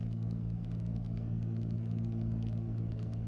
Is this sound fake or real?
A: fake